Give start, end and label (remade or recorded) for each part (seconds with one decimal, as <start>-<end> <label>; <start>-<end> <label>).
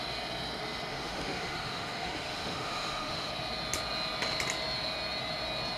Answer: 0.0-0.9 recorded; 0.9-3.3 remade; 3.3-5.8 recorded